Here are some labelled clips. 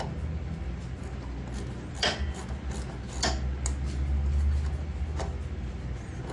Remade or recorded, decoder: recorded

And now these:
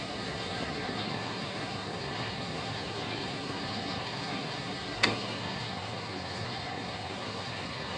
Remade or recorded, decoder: remade, codec, SNAC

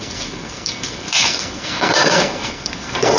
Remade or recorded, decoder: remade, codec, SNAC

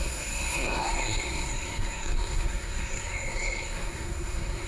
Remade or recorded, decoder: remade, codec, SNAC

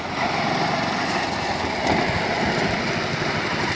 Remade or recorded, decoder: recorded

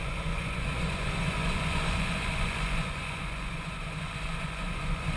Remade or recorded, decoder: remade, vocoder, Vocos